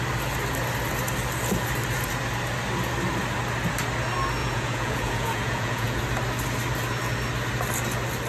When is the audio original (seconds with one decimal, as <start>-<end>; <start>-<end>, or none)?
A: 0.0-4.4; 6.0-8.3

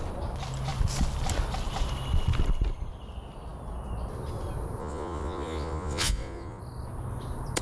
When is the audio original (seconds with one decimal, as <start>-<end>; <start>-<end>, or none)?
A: 0.0-4.8; 6.6-7.6

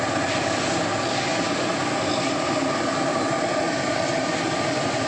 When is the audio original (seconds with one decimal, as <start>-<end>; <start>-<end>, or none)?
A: 0.0-5.1

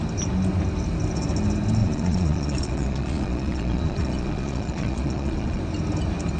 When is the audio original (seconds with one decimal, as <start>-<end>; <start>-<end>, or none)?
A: 0.0-1.8; 5.6-6.4

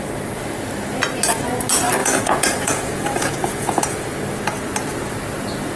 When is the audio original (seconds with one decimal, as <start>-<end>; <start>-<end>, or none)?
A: 0.0-2.0; 4.0-5.8

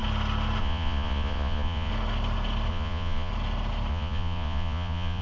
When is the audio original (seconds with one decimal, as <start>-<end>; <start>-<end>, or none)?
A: 0.0-0.6; 1.9-2.7; 3.3-3.9